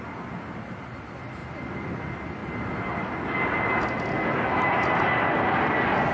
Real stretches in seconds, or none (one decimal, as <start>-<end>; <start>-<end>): 0.0-6.1